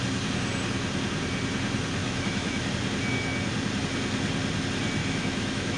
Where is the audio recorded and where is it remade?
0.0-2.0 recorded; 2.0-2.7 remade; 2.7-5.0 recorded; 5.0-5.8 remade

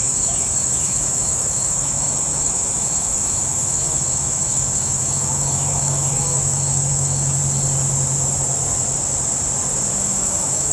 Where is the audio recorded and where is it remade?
0.0-7.4 remade; 7.4-9.9 recorded; 9.9-10.7 remade

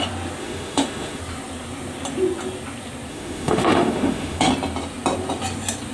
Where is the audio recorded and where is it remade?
0.0-0.4 recorded; 0.4-1.2 remade; 1.2-3.1 recorded; 3.1-4.5 remade; 4.5-5.9 recorded